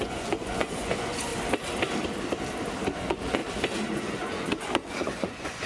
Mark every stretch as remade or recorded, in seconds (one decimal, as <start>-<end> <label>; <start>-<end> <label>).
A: 0.0-1.3 remade; 1.3-3.0 recorded; 3.0-3.4 remade; 3.4-3.9 recorded; 3.9-5.7 remade